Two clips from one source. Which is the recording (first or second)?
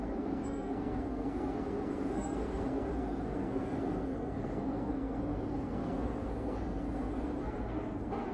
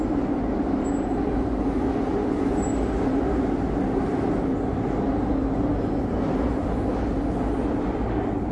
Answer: second